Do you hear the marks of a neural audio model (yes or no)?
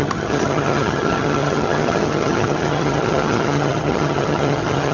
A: yes